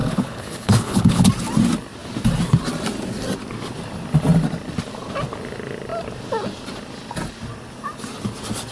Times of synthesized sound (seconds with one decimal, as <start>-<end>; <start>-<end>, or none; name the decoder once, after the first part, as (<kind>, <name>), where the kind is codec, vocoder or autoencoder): 0.0-1.3 (codec, HILCodec)